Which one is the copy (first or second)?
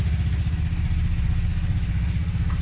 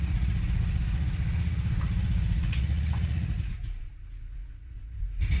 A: second